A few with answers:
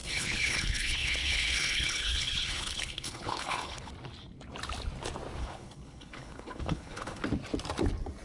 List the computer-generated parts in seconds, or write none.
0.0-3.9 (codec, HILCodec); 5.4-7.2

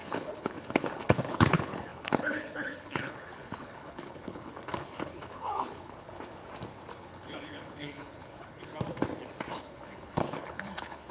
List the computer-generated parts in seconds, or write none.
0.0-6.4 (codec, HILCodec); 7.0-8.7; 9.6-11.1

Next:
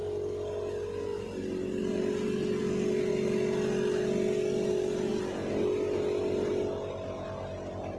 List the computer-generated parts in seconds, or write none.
none

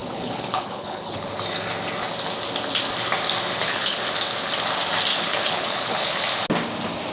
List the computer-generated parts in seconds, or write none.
0.0-1.3 (codec, HILCodec); 3.5-4.0; 5.1-6.2

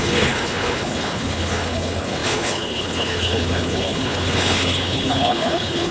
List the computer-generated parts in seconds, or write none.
0.0-5.9 (codec, HILCodec)